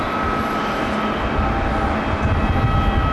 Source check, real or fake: real